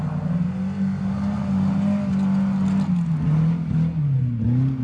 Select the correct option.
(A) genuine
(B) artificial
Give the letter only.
A